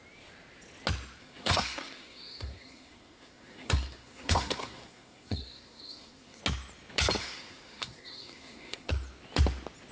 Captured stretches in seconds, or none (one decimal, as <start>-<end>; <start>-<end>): 0.0-1.2; 6.4-7.2; 8.9-9.9